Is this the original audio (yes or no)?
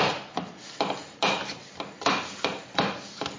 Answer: yes